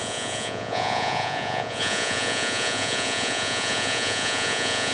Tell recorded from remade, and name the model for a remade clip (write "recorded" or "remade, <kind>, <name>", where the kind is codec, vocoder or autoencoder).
remade, vocoder, Vocos